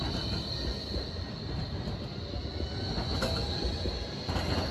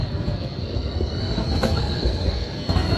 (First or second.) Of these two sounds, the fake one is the second